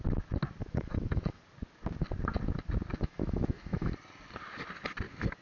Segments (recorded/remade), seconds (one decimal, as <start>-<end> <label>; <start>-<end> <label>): 0.0-0.6 recorded; 0.6-1.4 remade; 1.4-2.9 recorded; 2.9-3.9 remade; 3.9-5.4 recorded